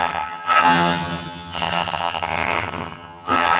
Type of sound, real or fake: fake